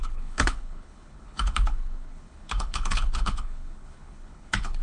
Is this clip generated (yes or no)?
yes